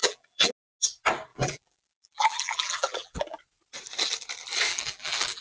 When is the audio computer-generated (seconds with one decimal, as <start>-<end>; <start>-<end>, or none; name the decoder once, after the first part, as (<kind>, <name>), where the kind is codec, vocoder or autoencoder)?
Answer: 0.0-0.5 (vocoder, BigVGAN v2); 1.3-3.4; 4.7-5.4